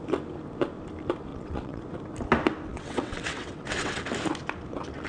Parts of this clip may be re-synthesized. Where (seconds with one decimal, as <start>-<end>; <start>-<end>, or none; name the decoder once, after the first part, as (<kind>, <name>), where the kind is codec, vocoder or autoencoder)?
1.3-1.8 (vocoder, WaveNeXt); 2.7-4.0

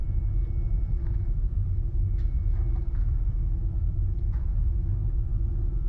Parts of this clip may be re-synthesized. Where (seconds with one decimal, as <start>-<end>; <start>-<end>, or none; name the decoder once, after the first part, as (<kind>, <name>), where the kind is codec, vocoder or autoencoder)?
1.0-1.7 (vocoder, Vocos); 2.8-5.9

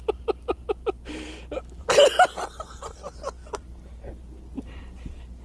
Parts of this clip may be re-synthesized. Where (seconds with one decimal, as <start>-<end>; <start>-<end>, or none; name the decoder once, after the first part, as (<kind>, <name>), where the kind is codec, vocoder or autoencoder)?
none

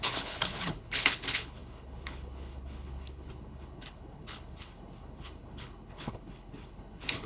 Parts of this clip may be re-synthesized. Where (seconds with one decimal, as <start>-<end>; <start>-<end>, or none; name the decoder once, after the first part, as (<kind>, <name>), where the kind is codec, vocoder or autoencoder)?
0.0-7.3 (codec, HILCodec)

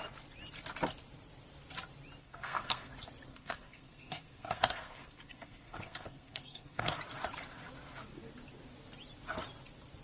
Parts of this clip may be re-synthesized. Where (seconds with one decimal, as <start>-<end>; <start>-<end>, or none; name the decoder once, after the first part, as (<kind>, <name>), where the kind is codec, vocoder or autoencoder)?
2.2-2.9 (codec, SNAC); 3.3-7.0

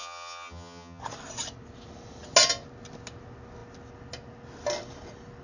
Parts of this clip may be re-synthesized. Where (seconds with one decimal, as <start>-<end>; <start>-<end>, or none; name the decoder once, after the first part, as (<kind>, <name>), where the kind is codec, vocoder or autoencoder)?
0.0-1.0 (vocoder, HiFi-GAN)

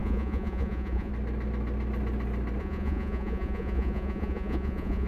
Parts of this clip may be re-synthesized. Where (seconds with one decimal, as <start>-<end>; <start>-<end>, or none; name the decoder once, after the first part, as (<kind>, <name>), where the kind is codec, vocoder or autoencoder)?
0.0-1.1 (vocoder, Vocos); 2.6-5.1